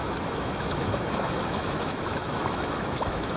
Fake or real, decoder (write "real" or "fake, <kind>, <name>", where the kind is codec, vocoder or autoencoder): fake, autoencoder, DAC-VAE